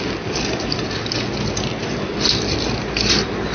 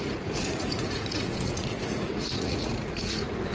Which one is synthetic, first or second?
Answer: second